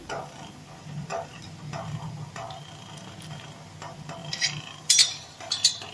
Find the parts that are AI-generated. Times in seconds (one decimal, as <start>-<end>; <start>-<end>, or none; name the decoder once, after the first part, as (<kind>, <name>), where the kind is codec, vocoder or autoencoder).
4.2-5.9 (vocoder, BigVGAN v2)

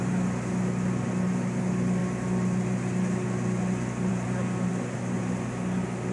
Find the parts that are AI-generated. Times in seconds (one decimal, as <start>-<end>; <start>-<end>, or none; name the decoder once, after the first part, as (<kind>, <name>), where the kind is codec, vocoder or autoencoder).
none